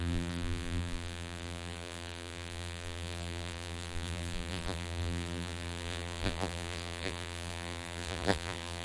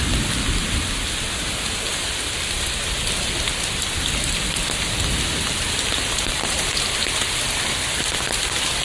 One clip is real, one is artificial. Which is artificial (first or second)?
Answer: first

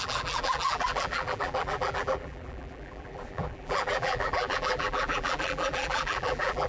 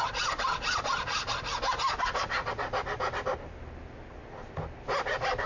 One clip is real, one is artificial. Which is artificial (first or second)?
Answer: first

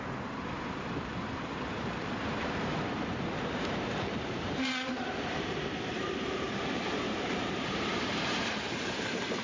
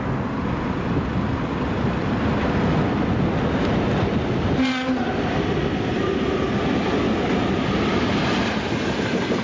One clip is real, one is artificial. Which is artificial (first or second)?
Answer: first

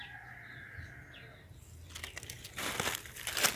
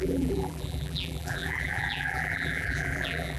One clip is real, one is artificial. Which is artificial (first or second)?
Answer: second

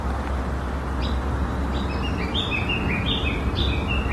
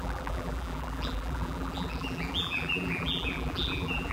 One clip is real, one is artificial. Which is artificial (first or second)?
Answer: second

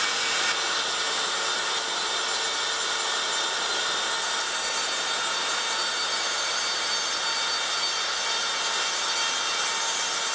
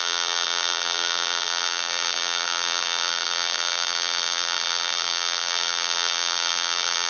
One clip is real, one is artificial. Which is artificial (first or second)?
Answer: second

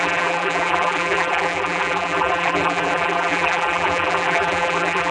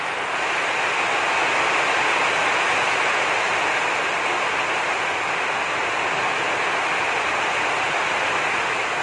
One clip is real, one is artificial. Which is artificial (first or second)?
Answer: first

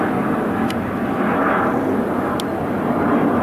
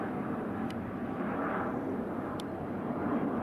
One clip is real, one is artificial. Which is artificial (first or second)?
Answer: second